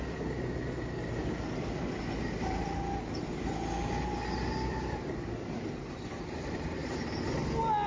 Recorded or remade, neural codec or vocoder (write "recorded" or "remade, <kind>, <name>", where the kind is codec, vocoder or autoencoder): recorded